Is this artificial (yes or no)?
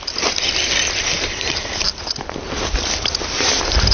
no